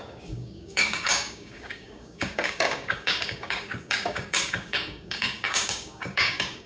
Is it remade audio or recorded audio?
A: remade